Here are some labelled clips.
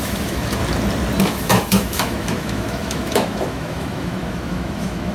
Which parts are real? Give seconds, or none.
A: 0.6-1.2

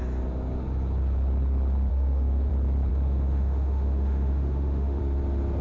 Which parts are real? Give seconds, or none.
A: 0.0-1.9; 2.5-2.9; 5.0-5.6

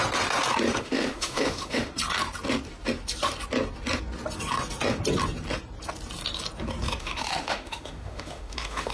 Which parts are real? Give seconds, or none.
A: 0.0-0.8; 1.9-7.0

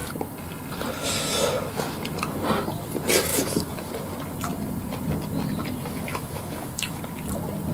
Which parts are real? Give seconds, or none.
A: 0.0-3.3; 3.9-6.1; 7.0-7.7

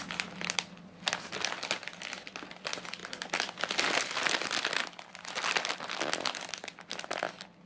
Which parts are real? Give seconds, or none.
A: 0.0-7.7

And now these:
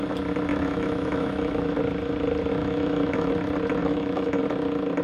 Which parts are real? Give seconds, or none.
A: 0.0-0.5; 1.8-2.6; 3.3-3.8; 4.4-5.0